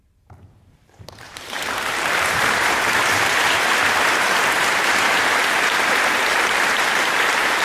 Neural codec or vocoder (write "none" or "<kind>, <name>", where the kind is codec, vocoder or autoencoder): vocoder, BigVGAN v2